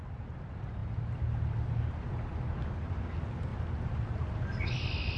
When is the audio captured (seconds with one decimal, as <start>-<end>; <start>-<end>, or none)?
0.0-5.2

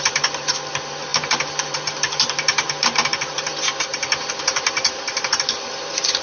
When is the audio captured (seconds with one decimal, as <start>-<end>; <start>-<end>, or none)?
none

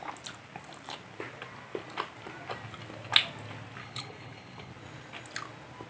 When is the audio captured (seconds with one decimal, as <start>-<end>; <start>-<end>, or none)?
0.0-3.8; 4.7-5.9